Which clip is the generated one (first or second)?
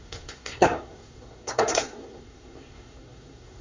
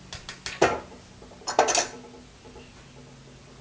first